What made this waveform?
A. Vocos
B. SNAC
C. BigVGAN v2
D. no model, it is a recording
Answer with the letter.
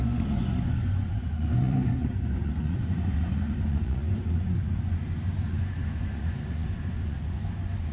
A